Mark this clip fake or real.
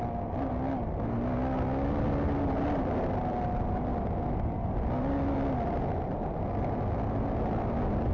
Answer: real